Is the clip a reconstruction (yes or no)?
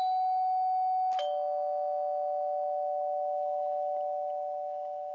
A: no